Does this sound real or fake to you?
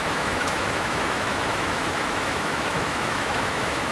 fake